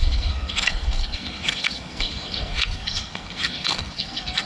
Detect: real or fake fake